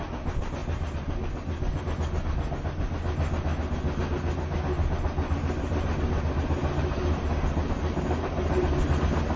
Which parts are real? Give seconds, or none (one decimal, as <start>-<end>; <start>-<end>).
0.0-9.4